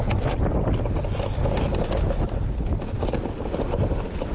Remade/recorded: recorded